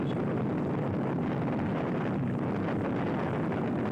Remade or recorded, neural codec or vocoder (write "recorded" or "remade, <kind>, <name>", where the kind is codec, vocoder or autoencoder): recorded